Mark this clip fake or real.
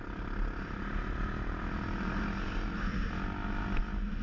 real